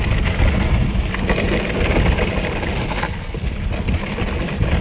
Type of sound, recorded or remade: recorded